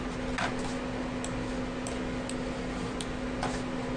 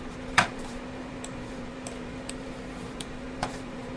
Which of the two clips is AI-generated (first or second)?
second